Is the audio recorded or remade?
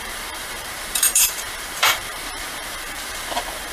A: remade